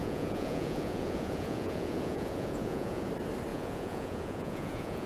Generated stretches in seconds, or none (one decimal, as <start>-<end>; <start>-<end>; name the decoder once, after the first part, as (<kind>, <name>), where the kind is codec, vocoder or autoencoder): 0.0-3.1 (vocoder, Vocos); 3.5-5.1